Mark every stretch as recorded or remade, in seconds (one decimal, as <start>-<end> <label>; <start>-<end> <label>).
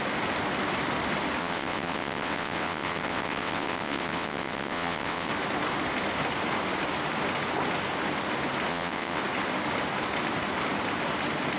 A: 0.0-1.4 recorded; 1.4-5.3 remade; 5.3-8.7 recorded; 8.7-9.2 remade; 9.2-11.6 recorded